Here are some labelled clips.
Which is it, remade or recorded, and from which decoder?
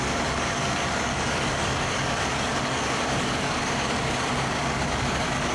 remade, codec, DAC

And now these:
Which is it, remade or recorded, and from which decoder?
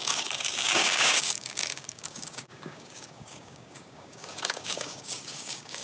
remade, codec, DAC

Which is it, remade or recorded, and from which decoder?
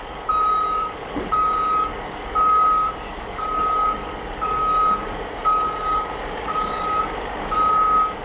remade, codec, DAC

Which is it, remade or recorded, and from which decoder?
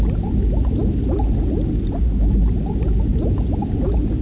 recorded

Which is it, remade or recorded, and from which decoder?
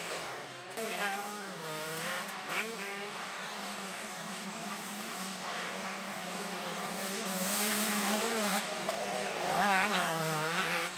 remade, codec, DAC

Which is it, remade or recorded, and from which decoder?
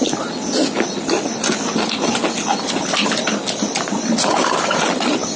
recorded